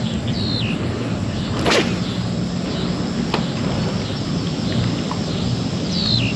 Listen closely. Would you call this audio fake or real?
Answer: real